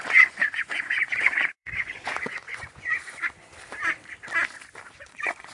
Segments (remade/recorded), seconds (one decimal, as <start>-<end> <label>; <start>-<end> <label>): 0.0-3.5 remade; 3.5-4.9 recorded; 4.9-5.5 remade